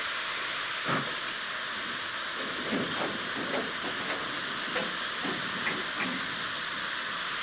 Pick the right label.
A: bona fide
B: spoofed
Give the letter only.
A